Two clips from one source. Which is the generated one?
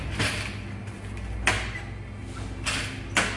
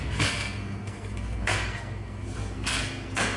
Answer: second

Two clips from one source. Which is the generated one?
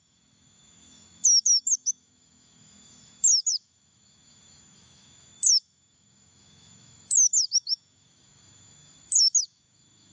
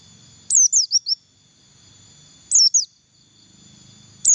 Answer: first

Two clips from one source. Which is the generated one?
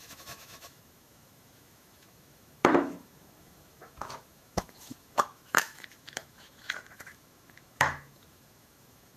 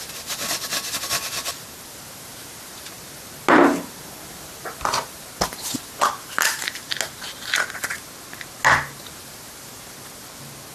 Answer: first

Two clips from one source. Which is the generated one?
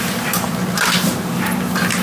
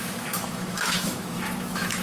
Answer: second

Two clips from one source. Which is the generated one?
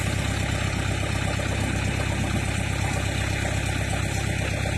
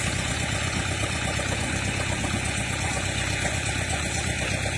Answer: second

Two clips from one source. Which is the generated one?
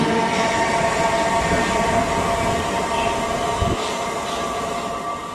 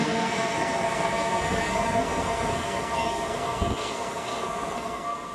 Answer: second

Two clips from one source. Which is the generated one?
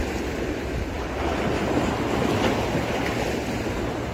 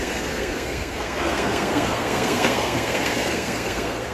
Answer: second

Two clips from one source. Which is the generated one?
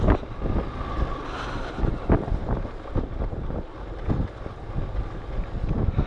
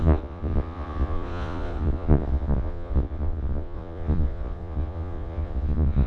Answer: second